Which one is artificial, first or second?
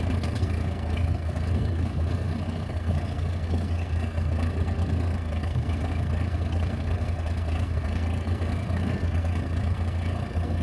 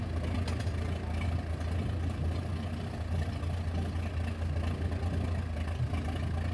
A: first